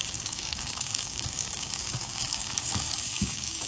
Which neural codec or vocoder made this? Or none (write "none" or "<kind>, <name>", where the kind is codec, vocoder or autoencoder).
codec, DAC